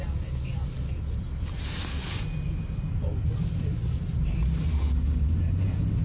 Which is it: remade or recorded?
recorded